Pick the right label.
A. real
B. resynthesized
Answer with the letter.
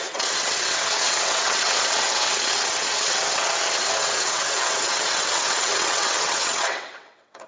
B